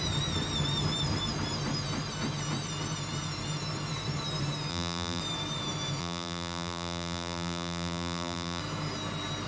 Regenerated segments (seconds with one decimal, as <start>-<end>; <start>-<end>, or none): 4.7-5.2; 6.0-8.6